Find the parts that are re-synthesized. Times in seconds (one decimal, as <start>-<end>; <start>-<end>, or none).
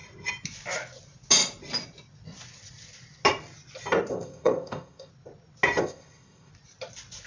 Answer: 4.1-5.1; 5.8-6.5